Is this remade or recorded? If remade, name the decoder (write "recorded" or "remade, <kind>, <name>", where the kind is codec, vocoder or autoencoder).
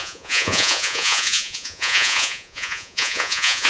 remade, vocoder, Vocos